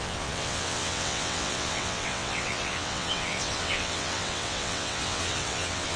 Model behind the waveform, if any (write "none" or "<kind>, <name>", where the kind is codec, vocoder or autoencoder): vocoder, WaveNeXt